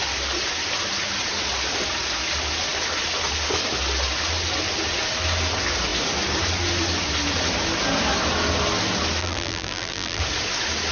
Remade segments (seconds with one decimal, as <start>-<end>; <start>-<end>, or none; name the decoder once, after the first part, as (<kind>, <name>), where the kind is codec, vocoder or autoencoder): 9.2-10.2 (vocoder, BigVGAN v2)